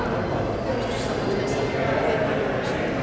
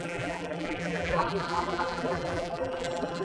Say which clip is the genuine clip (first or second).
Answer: first